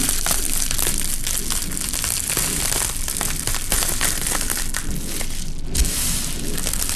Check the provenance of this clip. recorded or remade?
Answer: recorded